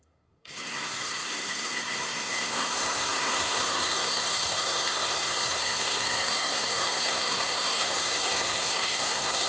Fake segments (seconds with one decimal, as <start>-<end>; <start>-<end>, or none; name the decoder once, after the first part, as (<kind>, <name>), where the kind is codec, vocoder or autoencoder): 0.0-9.5 (codec, SNAC)